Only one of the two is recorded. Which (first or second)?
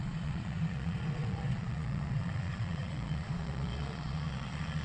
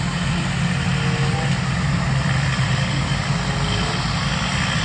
second